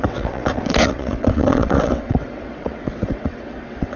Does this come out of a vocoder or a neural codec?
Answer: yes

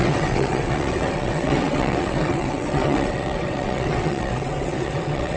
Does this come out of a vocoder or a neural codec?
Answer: yes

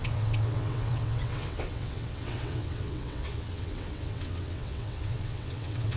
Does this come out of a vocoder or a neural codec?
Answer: yes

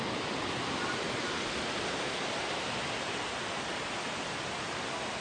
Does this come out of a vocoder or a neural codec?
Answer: no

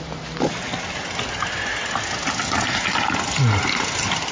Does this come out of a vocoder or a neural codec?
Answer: no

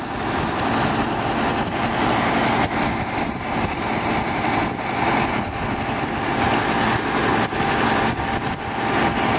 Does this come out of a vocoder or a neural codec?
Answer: no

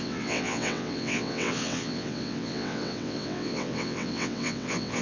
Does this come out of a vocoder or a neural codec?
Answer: yes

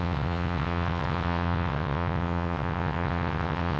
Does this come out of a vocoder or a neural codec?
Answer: yes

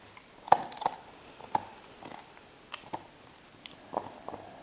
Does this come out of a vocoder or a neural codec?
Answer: no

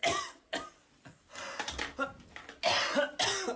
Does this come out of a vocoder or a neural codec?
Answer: no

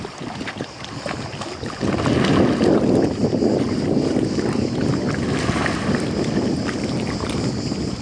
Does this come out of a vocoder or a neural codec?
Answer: no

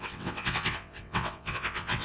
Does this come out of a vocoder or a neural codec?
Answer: yes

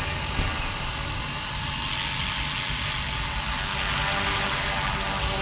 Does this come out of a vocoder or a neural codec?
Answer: no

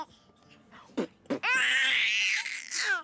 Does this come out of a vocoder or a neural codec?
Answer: no